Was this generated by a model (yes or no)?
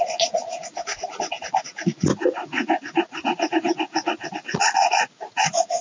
yes